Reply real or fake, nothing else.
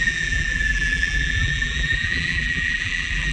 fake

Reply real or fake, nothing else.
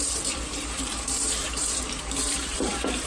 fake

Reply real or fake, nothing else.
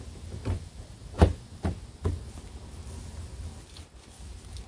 real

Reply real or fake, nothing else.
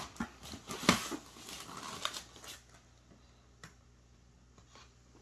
real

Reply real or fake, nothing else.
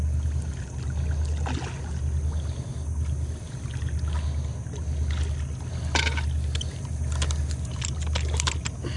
real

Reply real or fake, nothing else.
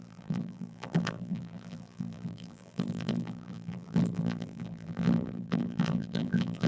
fake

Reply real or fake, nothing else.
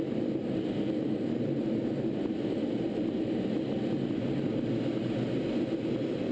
real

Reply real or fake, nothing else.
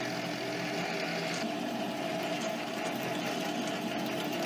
real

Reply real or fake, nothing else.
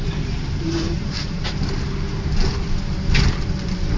fake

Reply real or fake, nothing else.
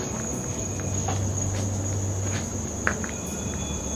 real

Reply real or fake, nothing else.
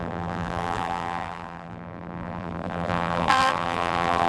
fake